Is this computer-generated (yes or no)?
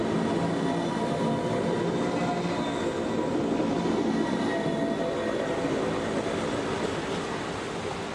no